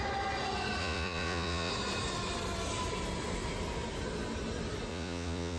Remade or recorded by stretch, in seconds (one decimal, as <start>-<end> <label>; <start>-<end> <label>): 0.0-0.8 recorded; 0.8-1.7 remade; 1.7-4.9 recorded; 4.9-5.6 remade